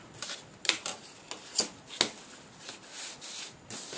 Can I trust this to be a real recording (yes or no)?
yes